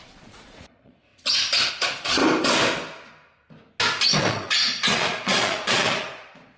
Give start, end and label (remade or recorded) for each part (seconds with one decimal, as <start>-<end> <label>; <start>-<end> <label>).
0.0-1.1 remade; 1.1-1.7 recorded; 1.7-2.2 remade; 2.2-4.2 recorded; 4.2-6.6 remade